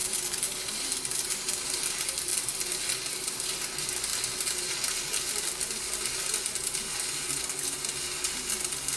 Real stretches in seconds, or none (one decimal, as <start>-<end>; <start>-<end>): 0.0-9.0